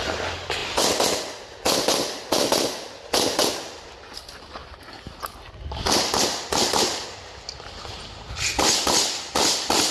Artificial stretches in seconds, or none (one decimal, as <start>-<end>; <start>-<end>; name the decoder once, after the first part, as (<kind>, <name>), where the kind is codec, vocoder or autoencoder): none